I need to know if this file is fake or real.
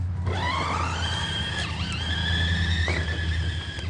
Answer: real